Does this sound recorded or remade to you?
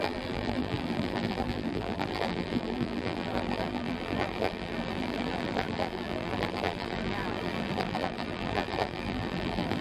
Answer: remade